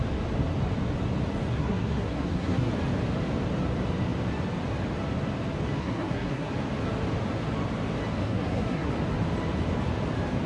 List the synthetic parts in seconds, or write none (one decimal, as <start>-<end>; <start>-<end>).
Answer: 1.5-2.7; 5.8-6.5; 8.2-8.9